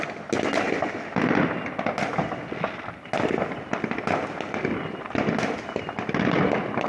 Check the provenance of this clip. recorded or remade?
recorded